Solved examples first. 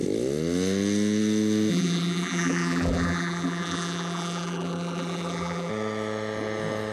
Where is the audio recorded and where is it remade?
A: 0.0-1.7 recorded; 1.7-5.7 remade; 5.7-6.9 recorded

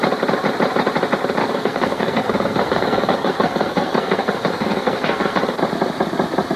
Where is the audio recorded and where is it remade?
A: 0.0-1.4 recorded; 1.4-5.4 remade; 5.4-6.6 recorded